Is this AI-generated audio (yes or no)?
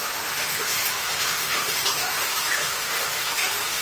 yes